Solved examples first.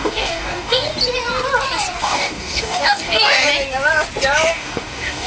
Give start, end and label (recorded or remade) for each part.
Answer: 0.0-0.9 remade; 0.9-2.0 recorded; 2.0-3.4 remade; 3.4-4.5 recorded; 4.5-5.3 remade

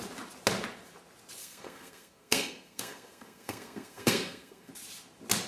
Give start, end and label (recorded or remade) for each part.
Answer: 0.0-1.4 recorded; 1.4-4.7 remade; 4.7-5.5 recorded